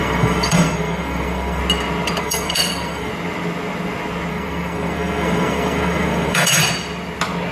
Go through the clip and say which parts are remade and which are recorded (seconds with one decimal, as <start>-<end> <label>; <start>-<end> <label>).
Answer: 0.0-1.6 remade; 1.6-2.2 recorded; 2.2-3.1 remade; 3.1-4.3 recorded; 4.3-6.6 remade; 6.6-7.5 recorded

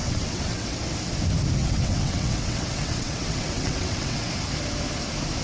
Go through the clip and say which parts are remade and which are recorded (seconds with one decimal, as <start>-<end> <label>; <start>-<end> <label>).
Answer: 0.0-0.8 remade; 0.8-1.6 recorded; 1.6-4.3 remade; 4.3-5.4 recorded

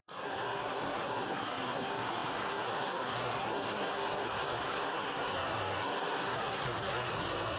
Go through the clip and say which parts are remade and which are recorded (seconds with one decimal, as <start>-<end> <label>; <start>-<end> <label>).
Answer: 0.0-7.6 remade

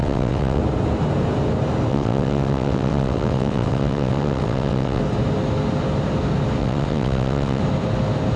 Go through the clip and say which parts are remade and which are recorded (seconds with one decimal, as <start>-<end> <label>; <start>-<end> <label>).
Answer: 0.0-0.6 remade; 0.6-1.9 recorded; 1.9-5.0 remade; 5.0-6.6 recorded; 6.6-7.6 remade; 7.6-8.4 recorded

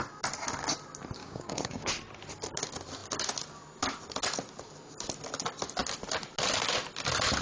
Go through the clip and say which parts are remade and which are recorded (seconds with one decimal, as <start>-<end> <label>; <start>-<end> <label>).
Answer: 0.0-1.2 recorded; 1.2-1.9 remade; 1.9-7.4 recorded

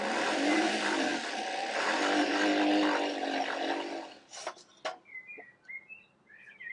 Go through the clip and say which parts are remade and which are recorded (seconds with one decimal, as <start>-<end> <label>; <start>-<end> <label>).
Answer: 0.0-1.1 remade; 1.1-1.8 recorded; 1.8-2.3 remade; 2.3-6.3 recorded; 6.3-6.7 remade

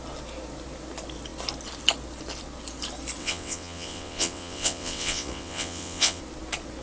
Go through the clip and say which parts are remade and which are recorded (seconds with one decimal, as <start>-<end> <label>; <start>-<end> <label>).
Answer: 0.0-3.2 recorded; 3.2-6.2 remade; 6.2-6.8 recorded